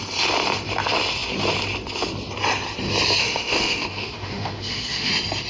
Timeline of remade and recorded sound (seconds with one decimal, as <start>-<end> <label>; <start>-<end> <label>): 0.0-3.2 recorded; 3.2-5.1 remade; 5.1-5.5 recorded